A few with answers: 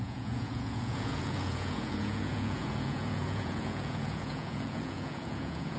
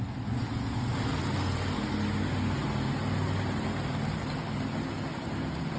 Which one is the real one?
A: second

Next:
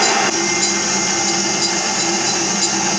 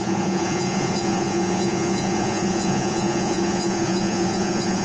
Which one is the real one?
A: first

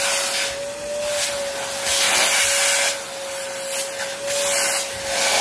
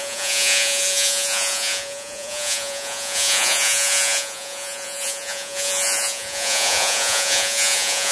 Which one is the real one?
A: first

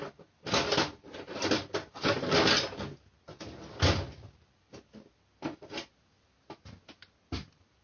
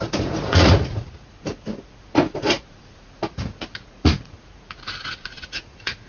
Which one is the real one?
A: first